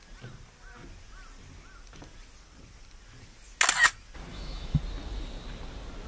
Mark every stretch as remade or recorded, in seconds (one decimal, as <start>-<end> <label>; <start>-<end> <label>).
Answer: 0.0-4.3 recorded; 4.3-4.8 remade; 4.8-6.1 recorded